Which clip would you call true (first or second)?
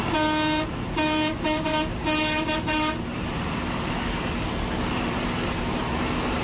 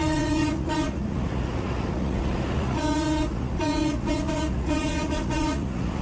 first